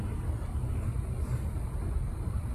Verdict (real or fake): real